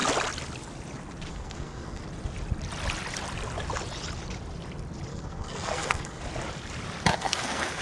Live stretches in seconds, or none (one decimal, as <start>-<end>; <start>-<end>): 0.0-1.3; 2.0-5.1; 6.2-7.1